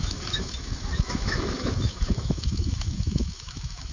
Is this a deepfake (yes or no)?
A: yes